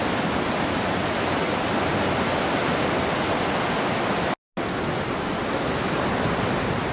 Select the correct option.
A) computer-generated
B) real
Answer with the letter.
B